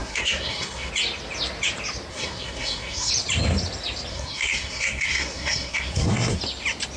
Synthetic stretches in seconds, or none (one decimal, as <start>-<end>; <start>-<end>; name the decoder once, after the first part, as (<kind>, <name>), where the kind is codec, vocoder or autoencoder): 0.0-0.9 (codec, SNAC); 2.1-3.1; 4.1-6.4